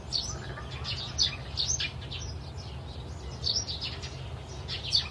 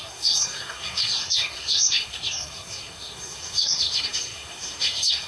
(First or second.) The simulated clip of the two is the second